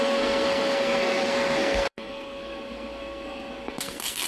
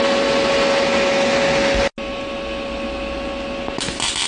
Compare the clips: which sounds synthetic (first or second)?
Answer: first